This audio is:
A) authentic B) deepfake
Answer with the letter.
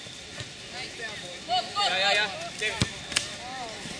A